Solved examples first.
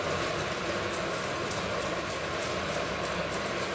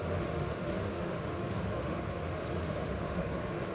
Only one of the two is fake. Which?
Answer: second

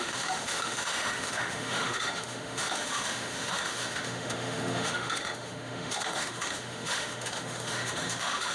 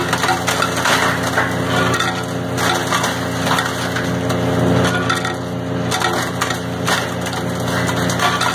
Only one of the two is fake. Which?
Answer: first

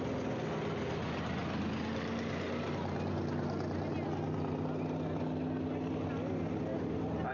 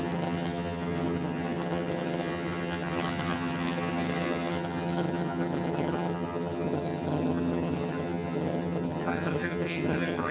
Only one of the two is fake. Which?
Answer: second